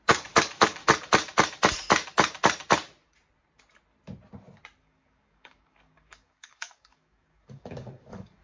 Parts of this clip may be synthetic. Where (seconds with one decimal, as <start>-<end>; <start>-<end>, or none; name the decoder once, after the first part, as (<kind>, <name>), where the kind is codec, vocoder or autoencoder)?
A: 0.0-0.8 (codec, DAC); 4.8-8.4